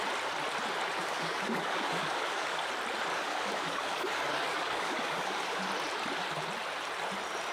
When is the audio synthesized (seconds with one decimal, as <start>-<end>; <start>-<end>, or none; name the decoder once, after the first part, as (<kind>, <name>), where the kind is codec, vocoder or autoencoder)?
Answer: 1.0-2.6 (codec, DAC); 3.1-5.6